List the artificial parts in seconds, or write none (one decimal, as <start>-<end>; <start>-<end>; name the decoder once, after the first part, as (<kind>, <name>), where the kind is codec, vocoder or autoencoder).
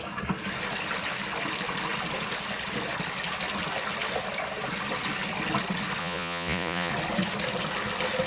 6.0-6.9 (vocoder, Vocos)